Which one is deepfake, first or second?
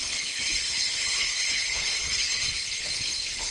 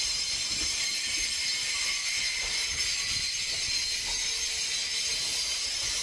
first